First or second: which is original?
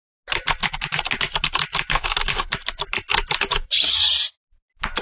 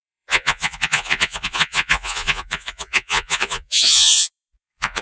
first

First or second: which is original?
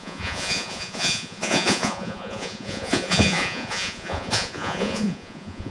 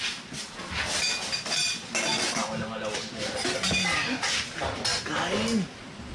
second